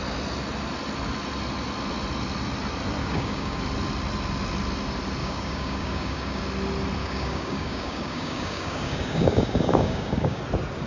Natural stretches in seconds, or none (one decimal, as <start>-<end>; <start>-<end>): 0.0-3.0; 3.6-5.2; 6.4-7.0; 10.4-10.9